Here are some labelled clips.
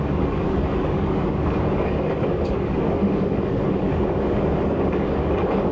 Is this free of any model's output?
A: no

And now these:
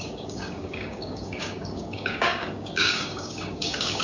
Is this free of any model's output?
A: no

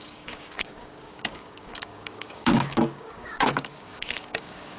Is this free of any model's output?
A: no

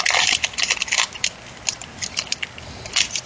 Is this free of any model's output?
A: yes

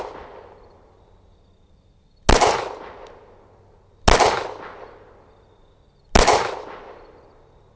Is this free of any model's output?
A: yes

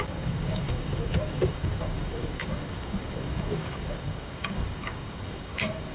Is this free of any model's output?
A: no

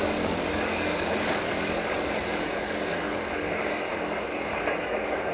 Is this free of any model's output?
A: no